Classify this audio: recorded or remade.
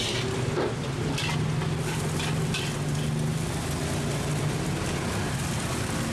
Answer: recorded